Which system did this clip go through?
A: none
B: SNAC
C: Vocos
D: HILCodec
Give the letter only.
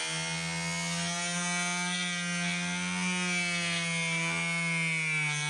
A